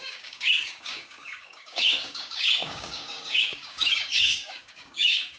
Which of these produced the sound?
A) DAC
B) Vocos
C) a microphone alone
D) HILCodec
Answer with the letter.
A